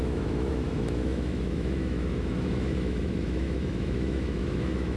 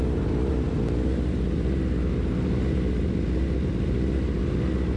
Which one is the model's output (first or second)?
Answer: first